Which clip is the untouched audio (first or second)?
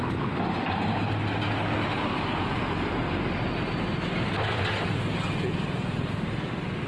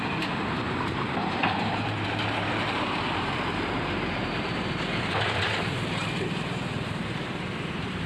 first